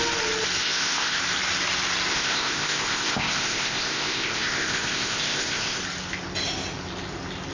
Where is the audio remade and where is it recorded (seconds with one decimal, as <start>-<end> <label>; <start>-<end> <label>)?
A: 0.0-0.6 recorded; 0.6-1.2 remade; 1.2-2.1 recorded; 2.1-5.8 remade; 5.8-7.5 recorded